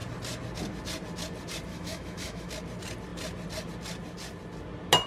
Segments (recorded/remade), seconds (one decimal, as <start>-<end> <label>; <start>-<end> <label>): 0.0-1.7 recorded; 1.7-2.5 remade; 2.5-5.1 recorded